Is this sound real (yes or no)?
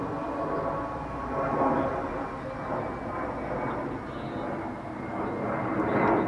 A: yes